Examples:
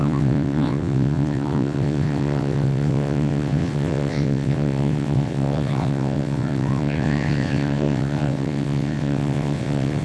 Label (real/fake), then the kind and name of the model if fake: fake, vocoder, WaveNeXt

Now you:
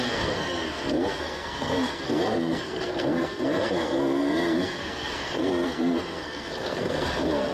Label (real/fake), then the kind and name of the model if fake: fake, codec, SNAC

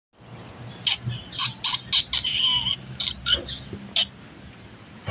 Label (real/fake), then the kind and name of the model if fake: real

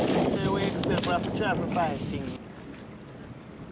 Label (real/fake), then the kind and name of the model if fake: real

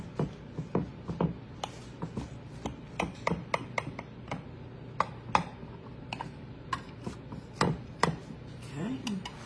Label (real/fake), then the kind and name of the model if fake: real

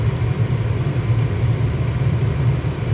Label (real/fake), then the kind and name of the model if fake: fake, vocoder, BigVGAN v2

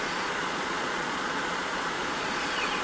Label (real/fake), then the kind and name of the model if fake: fake, vocoder, Vocos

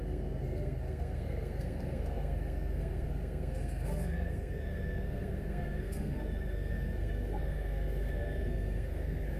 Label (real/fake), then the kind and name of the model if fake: fake, codec, SNAC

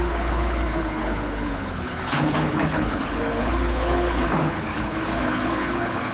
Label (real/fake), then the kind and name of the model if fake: fake, codec, HILCodec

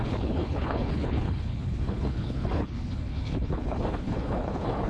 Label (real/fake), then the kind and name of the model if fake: fake, codec, HILCodec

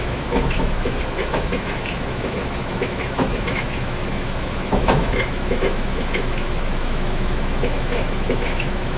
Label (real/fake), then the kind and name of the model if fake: fake, autoencoder, DAC-VAE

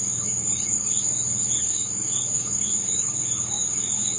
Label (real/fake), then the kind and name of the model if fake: fake, codec, DAC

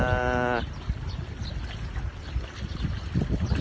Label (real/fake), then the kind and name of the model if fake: real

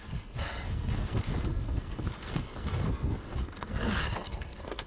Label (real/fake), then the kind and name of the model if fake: fake, codec, SNAC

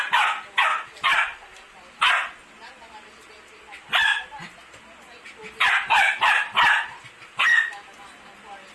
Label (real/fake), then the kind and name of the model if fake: real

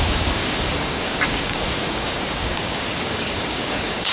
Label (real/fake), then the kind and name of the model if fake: fake, codec, DAC